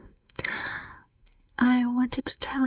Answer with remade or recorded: remade